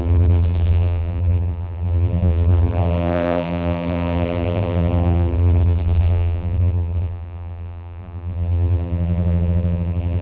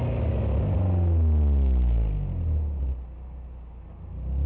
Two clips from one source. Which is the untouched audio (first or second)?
second